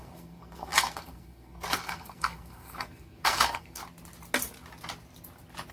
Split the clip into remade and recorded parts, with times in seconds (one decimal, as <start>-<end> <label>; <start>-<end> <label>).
0.0-3.8 remade; 3.8-5.7 recorded

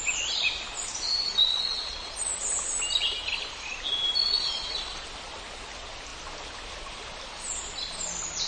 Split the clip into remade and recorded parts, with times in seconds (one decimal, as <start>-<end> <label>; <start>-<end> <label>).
0.0-1.5 recorded; 1.5-2.1 remade; 2.1-4.2 recorded; 4.2-5.0 remade; 5.0-8.5 recorded

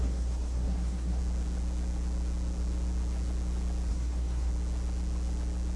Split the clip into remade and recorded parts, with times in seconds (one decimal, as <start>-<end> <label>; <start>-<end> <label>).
0.0-1.2 remade; 1.2-3.9 recorded; 3.9-4.5 remade; 4.5-5.8 recorded